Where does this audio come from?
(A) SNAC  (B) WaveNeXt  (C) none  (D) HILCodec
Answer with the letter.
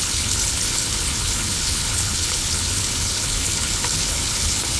D